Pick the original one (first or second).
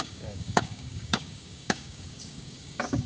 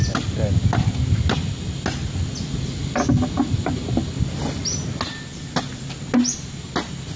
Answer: second